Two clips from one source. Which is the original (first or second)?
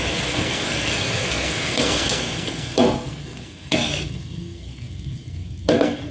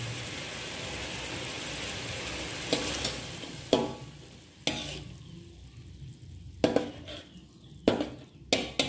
second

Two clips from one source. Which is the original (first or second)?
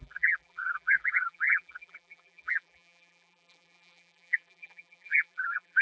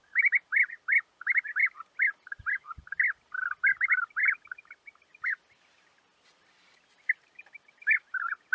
second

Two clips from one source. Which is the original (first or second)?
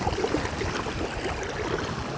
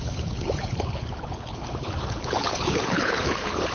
first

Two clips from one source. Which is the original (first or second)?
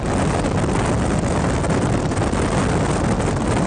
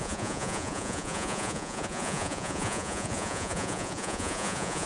first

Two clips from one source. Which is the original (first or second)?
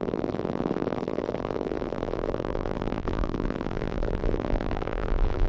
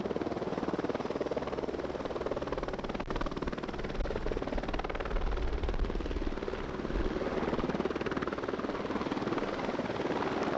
second